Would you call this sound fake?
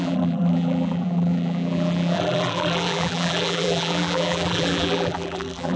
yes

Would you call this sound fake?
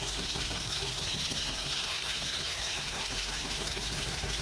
yes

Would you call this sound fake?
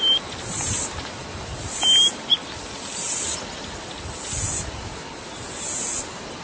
no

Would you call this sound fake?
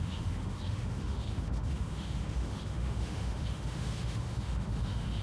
yes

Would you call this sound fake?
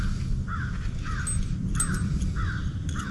no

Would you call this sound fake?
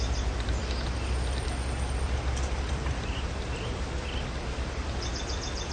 no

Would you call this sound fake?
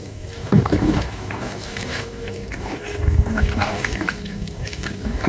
yes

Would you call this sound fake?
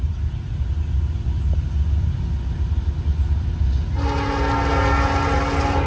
no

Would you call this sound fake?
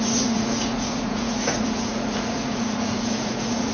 yes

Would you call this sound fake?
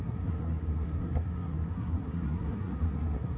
yes